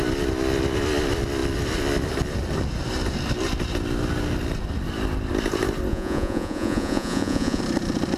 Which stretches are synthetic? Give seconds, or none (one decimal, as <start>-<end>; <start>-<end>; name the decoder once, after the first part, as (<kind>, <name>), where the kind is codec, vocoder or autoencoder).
5.9-7.6 (vocoder, Vocos)